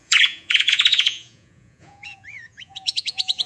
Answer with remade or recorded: remade